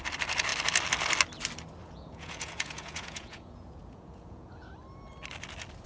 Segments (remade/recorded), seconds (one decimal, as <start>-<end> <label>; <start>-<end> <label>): 0.0-1.8 recorded; 1.8-4.7 remade; 4.7-5.9 recorded